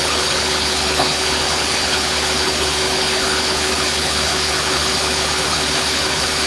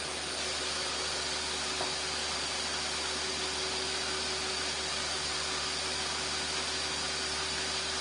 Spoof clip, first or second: first